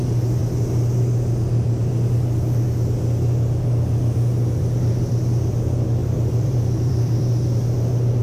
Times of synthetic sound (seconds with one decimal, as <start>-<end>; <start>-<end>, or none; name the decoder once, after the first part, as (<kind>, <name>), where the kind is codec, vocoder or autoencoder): 6.0-7.2 (vocoder, BigVGAN v2)